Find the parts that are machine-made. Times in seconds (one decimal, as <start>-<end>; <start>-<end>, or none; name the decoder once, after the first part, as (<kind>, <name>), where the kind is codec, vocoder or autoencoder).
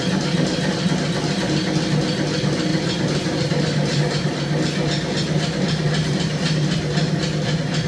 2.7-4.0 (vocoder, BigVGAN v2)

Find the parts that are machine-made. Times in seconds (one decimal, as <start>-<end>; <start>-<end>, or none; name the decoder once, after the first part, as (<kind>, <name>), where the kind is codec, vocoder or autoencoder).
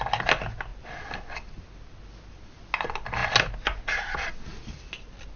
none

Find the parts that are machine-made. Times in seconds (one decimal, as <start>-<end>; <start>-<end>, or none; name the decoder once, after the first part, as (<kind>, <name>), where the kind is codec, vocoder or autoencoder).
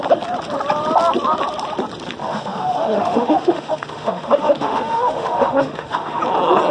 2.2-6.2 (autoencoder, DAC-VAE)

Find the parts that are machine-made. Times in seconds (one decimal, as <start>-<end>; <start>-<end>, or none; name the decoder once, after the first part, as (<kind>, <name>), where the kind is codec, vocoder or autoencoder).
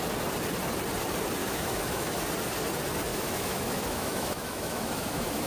1.4-2.2 (autoencoder, DAC-VAE); 3.1-5.5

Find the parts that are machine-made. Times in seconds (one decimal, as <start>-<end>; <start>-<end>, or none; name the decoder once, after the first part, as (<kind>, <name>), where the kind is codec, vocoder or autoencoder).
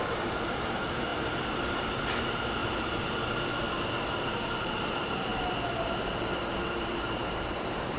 0.0-5.3 (vocoder, BigVGAN v2); 6.5-8.0